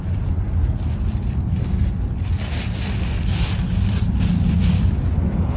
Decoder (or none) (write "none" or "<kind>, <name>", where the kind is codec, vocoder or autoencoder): none